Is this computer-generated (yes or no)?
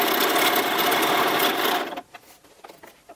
no